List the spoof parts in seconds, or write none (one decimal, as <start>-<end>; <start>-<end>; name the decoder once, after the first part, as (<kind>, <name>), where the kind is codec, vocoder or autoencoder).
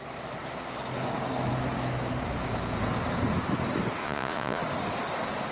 4.0-4.6 (vocoder, Vocos)